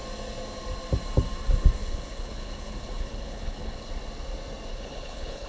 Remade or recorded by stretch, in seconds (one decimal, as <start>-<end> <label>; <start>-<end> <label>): 0.0-1.8 recorded; 1.8-3.9 remade; 3.9-4.7 recorded; 4.7-5.5 remade